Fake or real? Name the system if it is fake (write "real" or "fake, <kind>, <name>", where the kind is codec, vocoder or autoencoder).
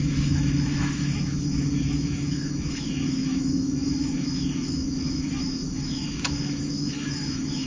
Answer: fake, autoencoder, DAC-VAE